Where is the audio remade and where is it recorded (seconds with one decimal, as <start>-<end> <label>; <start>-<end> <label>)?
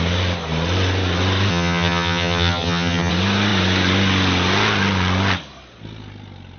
0.0-1.5 recorded; 1.5-3.1 remade; 3.1-6.6 recorded